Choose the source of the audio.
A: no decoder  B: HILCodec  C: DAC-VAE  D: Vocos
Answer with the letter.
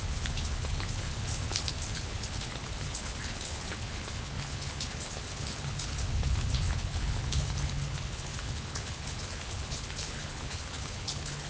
B